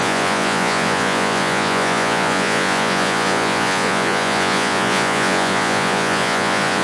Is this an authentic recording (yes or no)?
no